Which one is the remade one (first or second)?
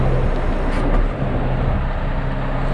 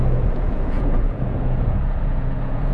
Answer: second